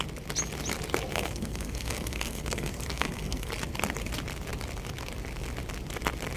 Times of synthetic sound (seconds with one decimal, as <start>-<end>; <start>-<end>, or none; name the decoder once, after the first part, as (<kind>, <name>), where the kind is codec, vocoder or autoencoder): 1.1-3.5 (codec, SNAC)